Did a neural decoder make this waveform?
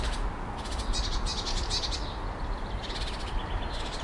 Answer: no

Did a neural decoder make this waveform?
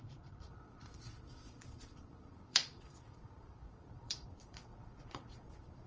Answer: yes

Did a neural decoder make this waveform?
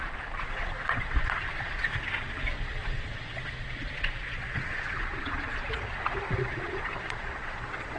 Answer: yes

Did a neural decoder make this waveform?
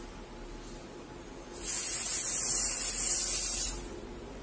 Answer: no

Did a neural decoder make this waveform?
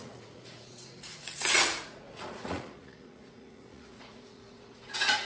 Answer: yes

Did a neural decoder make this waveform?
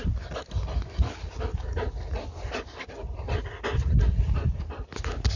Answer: no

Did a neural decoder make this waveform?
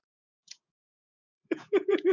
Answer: yes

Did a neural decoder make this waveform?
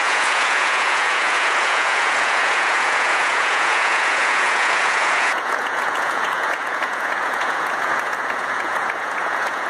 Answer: yes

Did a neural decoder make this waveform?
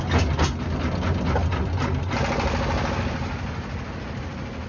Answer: no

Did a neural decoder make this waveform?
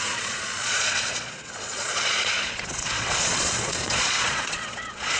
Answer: yes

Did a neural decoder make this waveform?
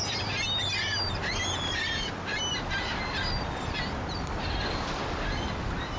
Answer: no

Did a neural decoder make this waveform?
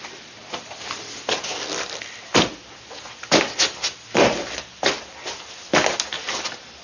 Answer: no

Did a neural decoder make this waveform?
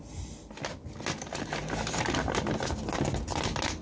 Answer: no